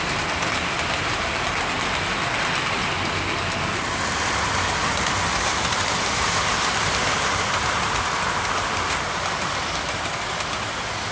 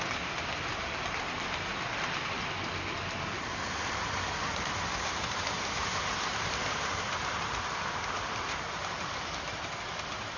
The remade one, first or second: second